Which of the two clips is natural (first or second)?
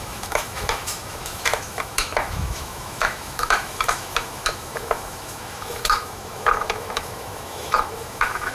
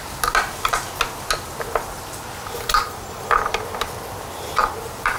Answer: second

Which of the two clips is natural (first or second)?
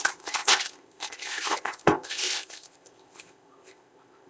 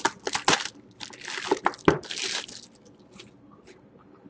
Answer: second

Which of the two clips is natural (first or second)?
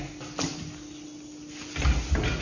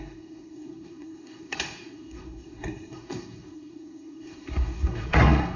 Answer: first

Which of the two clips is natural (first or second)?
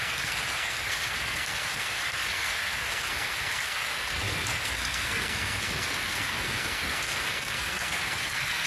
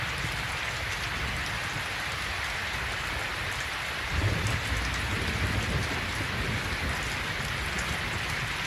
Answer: second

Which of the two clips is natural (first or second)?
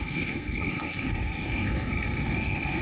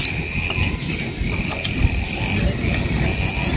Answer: second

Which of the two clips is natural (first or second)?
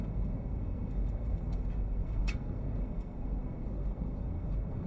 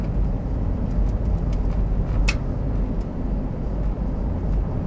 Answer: second